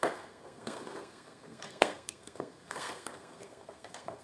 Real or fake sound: fake